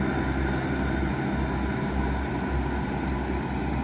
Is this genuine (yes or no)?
yes